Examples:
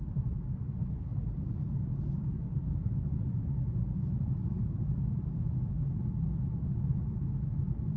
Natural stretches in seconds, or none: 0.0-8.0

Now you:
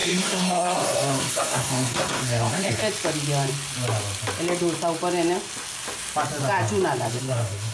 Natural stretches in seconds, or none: 2.8-7.1

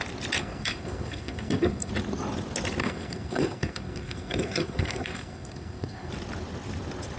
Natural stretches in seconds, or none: 0.0-0.4; 1.9-2.8; 6.1-7.2

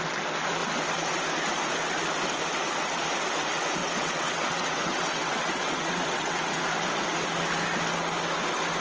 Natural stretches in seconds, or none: 0.0-3.8; 6.6-8.8

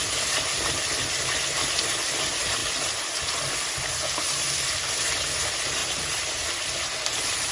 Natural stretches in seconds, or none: 0.0-5.8; 6.4-7.5

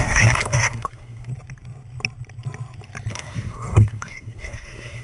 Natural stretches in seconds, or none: 1.3-3.1

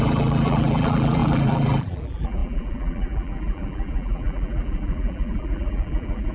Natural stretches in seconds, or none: none

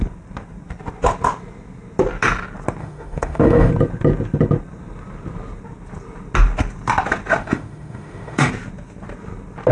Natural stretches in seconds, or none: 0.0-2.8; 3.7-7.4; 8.5-9.7